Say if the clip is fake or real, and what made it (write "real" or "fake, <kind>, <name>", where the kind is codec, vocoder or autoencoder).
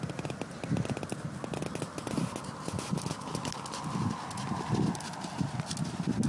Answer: real